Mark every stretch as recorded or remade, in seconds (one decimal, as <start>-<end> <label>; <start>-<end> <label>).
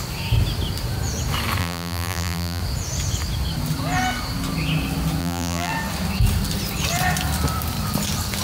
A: 0.0-1.6 recorded; 1.6-2.6 remade; 2.6-5.2 recorded; 5.2-5.7 remade; 5.7-8.4 recorded